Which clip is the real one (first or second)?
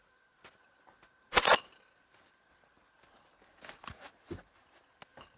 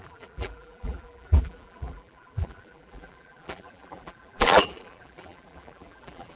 first